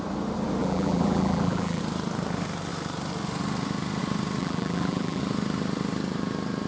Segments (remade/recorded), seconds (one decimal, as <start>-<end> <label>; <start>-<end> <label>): 0.0-0.6 recorded; 0.6-1.8 remade; 1.8-4.4 recorded; 4.4-5.2 remade; 5.2-6.7 recorded